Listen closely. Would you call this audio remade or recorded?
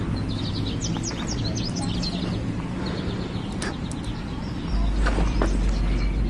recorded